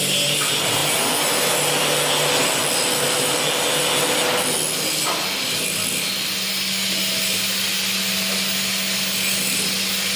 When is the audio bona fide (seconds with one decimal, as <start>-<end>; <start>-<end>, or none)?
0.0-10.2